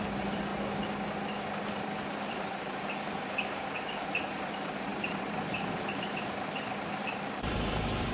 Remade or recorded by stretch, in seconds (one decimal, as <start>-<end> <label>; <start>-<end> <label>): 0.0-0.5 remade; 0.5-2.0 recorded; 2.0-8.1 remade